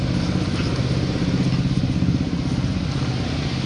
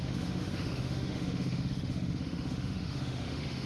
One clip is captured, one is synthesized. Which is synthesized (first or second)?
second